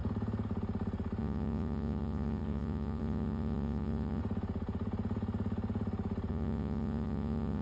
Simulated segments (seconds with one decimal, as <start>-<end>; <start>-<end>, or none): 1.2-4.2; 6.3-7.6